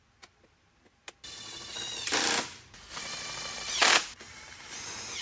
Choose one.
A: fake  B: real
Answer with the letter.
B